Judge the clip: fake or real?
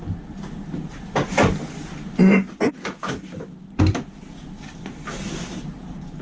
real